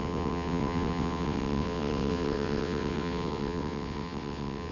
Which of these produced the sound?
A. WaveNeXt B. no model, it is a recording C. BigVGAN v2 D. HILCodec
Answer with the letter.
A